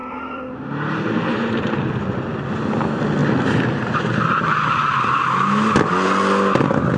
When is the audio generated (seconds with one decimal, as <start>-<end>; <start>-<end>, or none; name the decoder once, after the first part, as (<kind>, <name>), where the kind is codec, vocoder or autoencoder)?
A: 0.0-2.4 (vocoder, BigVGAN v2); 3.2-4.6